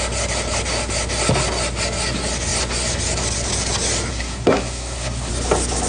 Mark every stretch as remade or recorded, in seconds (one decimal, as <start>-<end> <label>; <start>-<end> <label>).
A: 0.0-4.1 recorded; 4.1-5.3 remade; 5.3-5.9 recorded